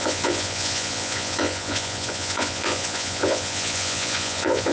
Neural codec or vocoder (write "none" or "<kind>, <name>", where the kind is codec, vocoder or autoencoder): vocoder, Vocos